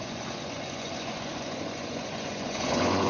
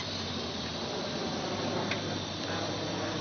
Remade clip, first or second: first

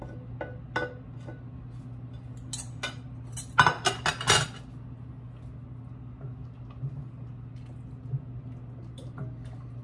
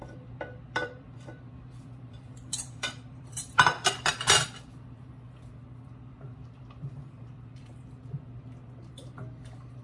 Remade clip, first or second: second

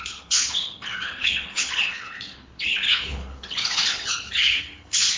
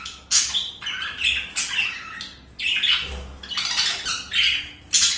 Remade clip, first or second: first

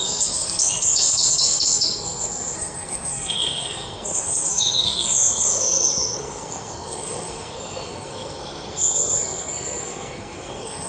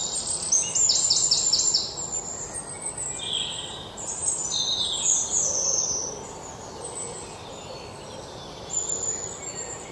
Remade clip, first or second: first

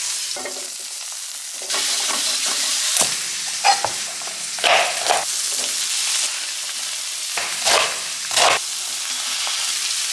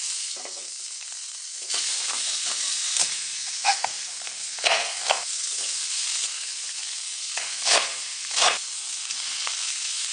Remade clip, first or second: second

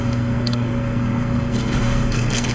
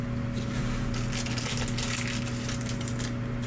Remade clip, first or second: first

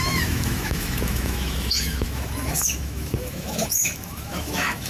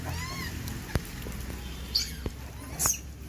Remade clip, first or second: first